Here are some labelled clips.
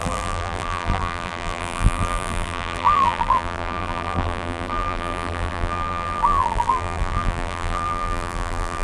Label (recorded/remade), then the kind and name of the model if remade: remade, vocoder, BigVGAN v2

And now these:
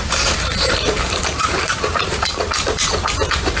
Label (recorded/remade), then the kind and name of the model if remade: remade, vocoder, BigVGAN v2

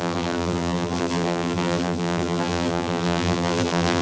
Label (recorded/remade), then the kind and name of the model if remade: remade, vocoder, BigVGAN v2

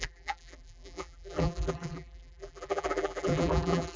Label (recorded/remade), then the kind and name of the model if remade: remade, vocoder, BigVGAN v2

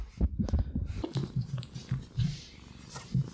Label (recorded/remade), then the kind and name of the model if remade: remade, vocoder, BigVGAN v2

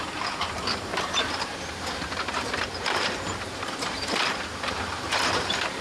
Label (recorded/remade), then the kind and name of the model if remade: remade, vocoder, BigVGAN v2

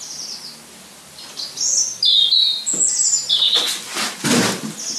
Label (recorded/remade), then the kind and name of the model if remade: recorded